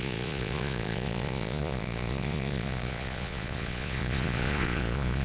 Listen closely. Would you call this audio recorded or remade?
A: remade